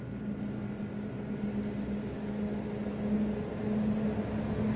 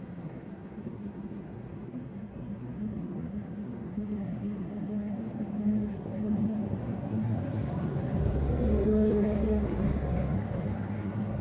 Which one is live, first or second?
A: first